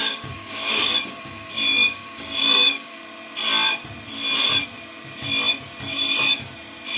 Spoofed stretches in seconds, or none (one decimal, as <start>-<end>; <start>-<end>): 0.0-3.0